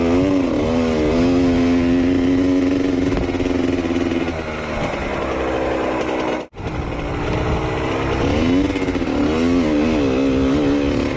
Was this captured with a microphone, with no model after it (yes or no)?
yes